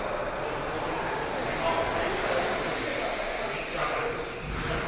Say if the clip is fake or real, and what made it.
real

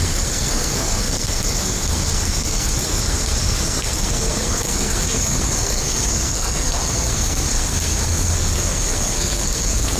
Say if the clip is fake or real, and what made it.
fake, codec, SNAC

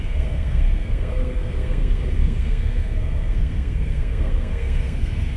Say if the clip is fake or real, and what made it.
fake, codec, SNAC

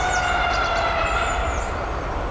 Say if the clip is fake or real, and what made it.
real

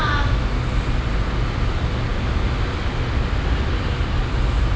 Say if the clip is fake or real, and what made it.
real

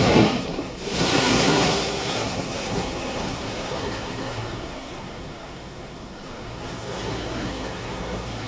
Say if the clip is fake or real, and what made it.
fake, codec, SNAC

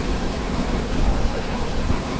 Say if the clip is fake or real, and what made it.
fake, codec, SNAC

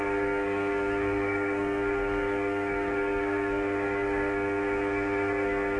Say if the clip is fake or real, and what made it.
fake, codec, SNAC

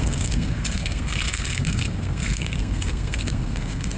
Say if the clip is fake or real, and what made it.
fake, codec, SNAC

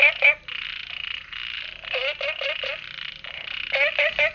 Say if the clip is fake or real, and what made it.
real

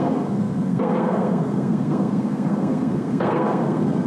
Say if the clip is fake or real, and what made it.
fake, codec, SNAC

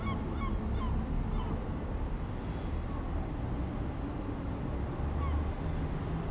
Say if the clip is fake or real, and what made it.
real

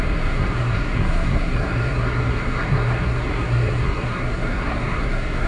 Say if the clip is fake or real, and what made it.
fake, codec, SNAC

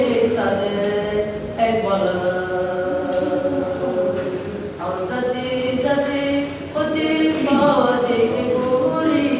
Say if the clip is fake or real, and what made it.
real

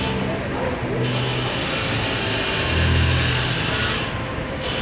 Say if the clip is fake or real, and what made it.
real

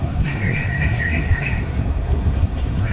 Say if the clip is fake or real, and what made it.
fake, codec, SNAC